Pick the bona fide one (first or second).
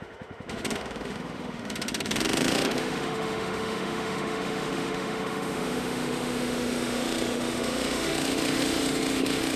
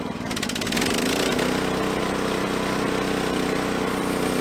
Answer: second